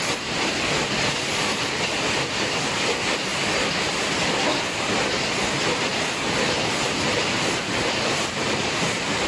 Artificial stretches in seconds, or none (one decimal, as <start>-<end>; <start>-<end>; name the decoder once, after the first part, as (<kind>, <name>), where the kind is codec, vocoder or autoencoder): 0.0-3.3 (vocoder, BigVGAN v2); 3.9-4.5; 6.4-9.3

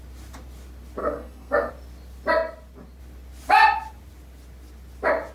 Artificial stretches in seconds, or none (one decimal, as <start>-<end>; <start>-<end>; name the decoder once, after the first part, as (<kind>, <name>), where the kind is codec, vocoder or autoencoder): 1.0-1.7 (codec, SNAC)

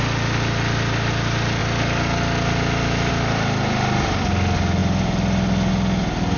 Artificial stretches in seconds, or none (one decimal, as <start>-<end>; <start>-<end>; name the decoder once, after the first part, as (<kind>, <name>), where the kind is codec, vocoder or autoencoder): none

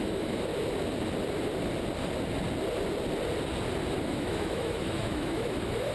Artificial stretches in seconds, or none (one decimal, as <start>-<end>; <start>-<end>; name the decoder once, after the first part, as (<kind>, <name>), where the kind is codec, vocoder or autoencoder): 0.0-0.5 (autoencoder, DAC-VAE); 4.0-5.9

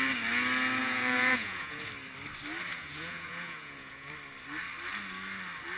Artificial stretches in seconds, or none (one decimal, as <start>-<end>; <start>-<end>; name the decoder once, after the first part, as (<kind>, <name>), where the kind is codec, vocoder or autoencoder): 0.8-1.9 (vocoder, Vocos); 2.7-4.1

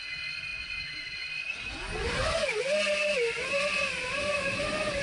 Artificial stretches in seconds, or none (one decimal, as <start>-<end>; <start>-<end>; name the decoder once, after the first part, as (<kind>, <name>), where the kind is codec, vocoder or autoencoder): none